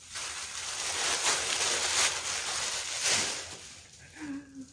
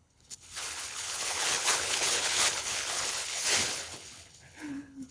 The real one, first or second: first